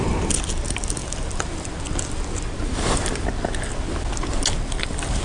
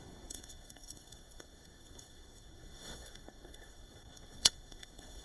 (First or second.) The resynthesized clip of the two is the second